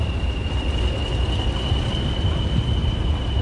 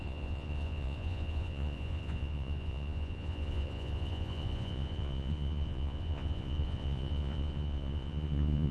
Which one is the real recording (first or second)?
first